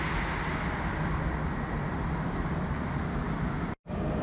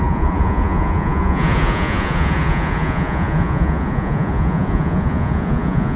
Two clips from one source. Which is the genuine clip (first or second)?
first